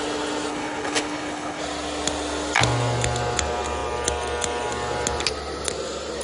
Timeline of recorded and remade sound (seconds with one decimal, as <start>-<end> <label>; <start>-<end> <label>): 0.0-0.5 recorded; 0.5-1.6 remade; 1.6-6.2 recorded